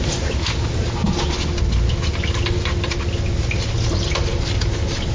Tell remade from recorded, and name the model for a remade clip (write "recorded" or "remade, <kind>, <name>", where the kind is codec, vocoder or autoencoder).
recorded